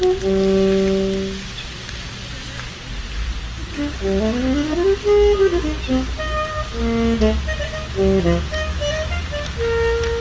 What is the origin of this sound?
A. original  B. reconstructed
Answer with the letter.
A